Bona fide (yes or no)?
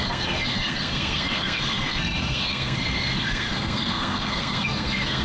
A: no